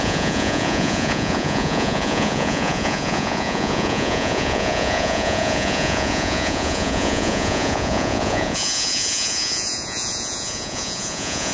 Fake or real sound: fake